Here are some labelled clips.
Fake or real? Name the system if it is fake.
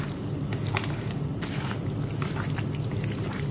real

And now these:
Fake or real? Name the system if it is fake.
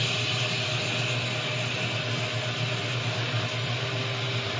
real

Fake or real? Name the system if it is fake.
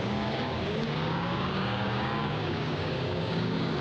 fake, codec, DAC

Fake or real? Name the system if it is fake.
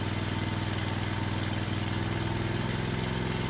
real